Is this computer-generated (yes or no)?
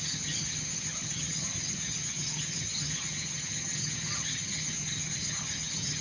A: yes